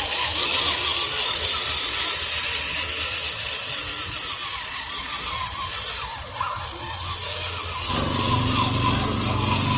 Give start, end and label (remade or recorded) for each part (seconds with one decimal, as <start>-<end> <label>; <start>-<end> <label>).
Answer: 0.0-9.8 recorded